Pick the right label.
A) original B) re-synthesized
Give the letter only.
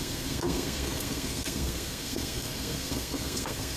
B